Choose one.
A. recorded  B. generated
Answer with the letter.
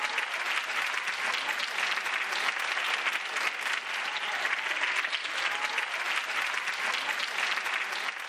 A